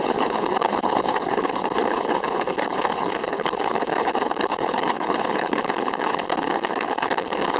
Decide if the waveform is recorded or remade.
remade